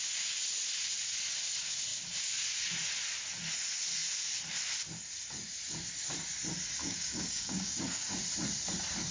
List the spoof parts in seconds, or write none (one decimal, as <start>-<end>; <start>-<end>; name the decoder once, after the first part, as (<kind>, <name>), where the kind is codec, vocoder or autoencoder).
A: 6.8-8.2 (codec, DAC)